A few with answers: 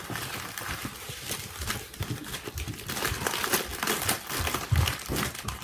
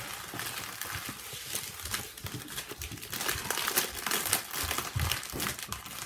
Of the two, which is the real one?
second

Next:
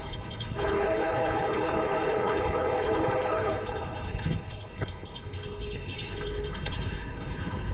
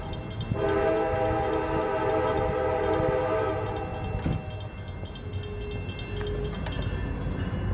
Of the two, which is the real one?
second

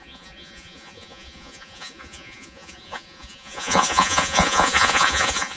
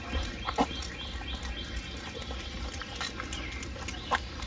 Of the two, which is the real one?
second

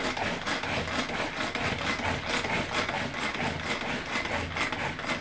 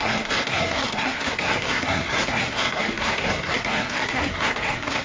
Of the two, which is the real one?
first